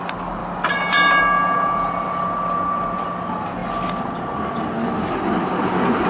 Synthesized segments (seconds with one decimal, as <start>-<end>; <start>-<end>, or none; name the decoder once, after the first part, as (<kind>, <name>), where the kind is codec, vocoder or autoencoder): none

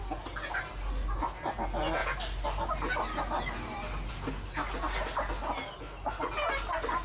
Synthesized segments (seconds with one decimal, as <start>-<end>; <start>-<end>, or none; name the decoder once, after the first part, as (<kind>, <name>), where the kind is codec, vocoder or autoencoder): none